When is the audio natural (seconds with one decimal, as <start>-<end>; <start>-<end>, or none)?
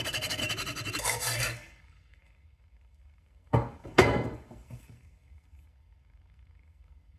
0.4-1.0